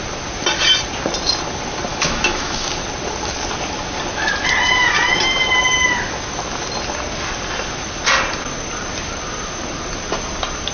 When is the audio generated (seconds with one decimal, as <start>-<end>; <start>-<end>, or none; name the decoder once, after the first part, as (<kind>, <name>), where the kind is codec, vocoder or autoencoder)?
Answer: 1.9-2.7 (autoencoder, DAC-VAE)